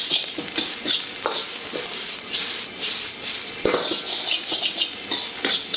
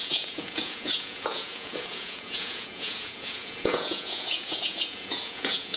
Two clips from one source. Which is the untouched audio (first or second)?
first